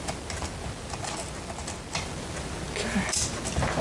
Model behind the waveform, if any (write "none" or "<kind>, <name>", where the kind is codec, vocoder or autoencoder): none